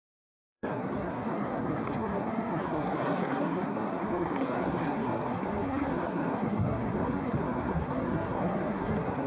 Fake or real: fake